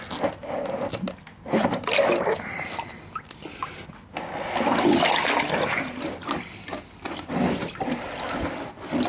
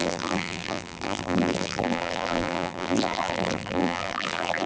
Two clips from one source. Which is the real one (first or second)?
first